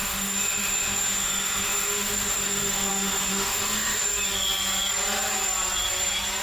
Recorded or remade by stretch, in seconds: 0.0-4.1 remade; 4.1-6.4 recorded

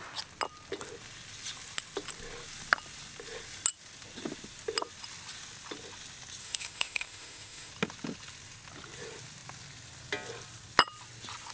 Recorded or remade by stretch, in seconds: 0.0-6.4 recorded; 6.4-7.7 remade; 7.7-11.5 recorded

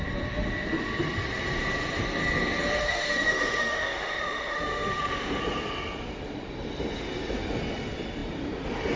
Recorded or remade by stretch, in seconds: 0.0-2.8 recorded; 2.8-5.4 remade; 5.4-9.0 recorded

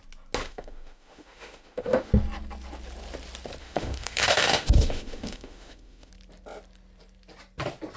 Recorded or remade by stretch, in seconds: 0.0-0.4 recorded; 0.4-2.1 remade; 2.1-3.6 recorded; 3.6-6.1 remade; 6.1-8.0 recorded

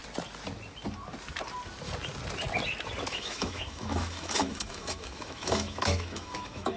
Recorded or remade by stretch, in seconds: 0.0-3.1 recorded; 3.1-6.8 remade